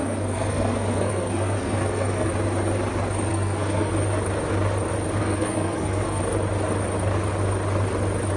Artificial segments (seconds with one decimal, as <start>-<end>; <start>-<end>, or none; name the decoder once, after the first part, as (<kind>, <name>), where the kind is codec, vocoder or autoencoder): 0.0-2.3 (codec, SNAC); 3.3-3.9; 5.2-6.2